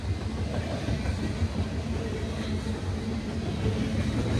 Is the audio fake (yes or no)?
no